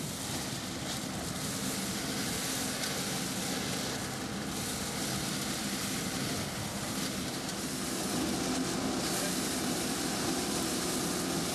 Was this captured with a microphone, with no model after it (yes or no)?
yes